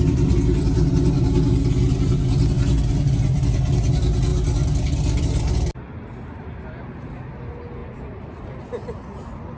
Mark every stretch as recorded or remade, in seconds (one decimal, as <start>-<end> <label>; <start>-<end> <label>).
0.0-9.6 recorded